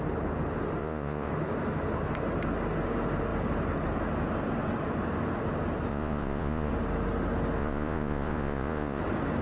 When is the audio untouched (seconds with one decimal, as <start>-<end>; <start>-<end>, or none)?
0.0-0.8; 1.3-5.9; 6.7-7.6; 9.0-9.4